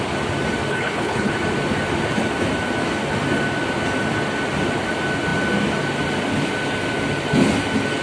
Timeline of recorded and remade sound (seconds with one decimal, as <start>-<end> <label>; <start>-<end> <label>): 0.0-0.7 recorded; 0.7-1.3 remade; 1.3-8.0 recorded